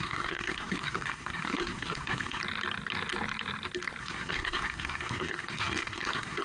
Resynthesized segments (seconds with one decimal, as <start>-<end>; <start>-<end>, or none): 0.0-2.4; 4.0-6.4